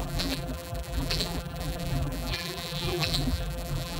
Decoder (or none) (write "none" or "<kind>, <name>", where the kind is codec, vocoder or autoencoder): vocoder, BigVGAN v2